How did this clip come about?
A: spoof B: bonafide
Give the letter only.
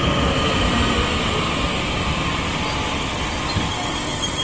B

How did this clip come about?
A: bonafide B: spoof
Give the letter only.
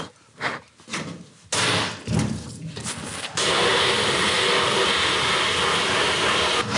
A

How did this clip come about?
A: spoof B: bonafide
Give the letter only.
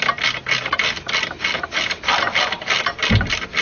B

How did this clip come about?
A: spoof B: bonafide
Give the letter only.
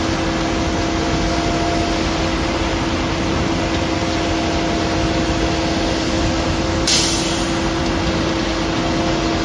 B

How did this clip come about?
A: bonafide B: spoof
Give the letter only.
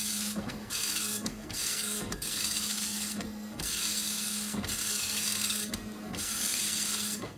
B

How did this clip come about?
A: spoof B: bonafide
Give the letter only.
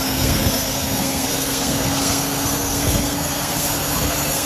A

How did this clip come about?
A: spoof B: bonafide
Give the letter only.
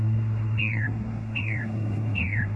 A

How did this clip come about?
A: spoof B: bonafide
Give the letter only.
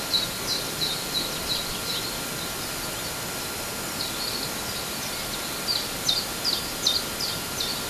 B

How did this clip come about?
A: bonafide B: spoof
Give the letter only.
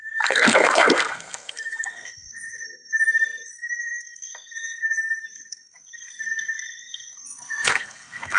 B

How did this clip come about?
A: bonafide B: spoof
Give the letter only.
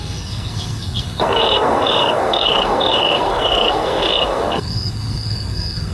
B